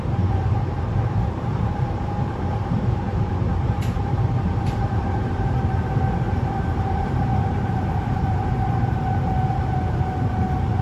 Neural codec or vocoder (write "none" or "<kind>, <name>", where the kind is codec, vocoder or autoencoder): vocoder, BigVGAN v2